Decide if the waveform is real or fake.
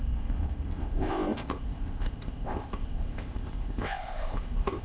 fake